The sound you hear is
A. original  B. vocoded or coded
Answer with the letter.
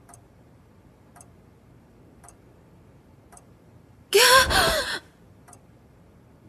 B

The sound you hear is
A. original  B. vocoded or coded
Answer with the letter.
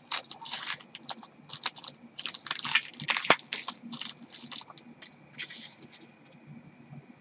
A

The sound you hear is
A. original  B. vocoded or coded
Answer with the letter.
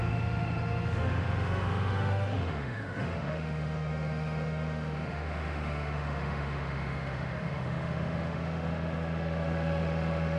B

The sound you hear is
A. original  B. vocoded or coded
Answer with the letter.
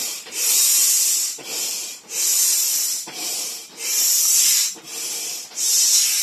B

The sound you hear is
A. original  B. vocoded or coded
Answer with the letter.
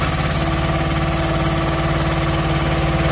A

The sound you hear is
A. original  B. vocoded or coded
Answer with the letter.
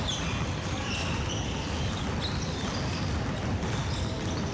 A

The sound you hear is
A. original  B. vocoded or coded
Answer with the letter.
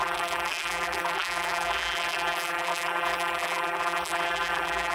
B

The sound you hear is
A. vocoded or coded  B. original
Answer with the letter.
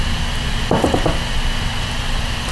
B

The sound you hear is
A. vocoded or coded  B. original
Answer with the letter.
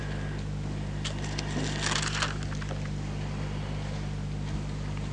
B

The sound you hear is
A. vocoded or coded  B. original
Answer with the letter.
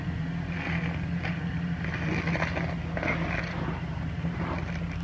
B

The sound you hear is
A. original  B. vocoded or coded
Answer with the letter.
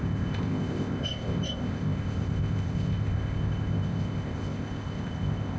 B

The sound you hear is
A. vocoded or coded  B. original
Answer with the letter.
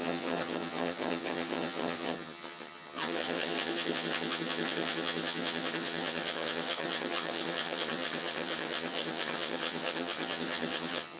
A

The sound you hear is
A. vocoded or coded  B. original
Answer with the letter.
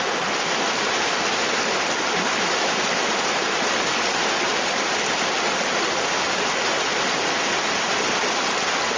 B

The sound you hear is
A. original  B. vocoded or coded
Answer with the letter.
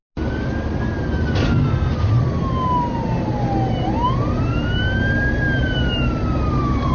A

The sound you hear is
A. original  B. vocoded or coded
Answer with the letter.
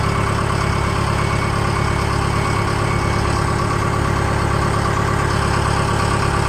A